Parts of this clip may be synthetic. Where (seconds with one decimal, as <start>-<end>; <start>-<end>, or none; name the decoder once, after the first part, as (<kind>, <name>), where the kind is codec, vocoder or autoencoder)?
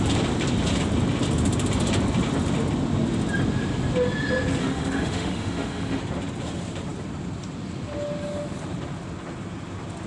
4.6-6.0 (autoencoder, DAC-VAE)